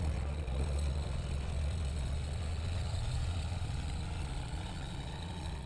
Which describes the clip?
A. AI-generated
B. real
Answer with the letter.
A